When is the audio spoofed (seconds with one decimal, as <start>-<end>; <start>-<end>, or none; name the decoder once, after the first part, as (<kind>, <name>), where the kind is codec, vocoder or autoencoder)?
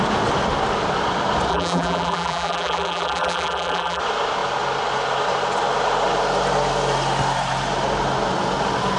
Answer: 1.5-4.0 (vocoder, BigVGAN v2)